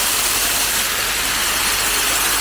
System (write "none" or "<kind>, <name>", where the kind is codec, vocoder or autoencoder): none